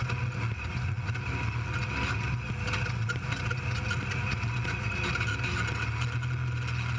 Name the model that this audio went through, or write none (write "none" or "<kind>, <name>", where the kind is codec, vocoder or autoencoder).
none